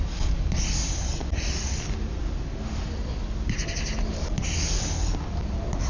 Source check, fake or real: real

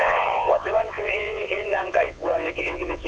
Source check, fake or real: fake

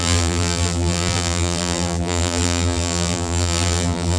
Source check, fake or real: fake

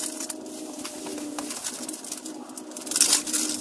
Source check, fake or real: real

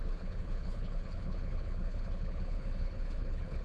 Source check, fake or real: fake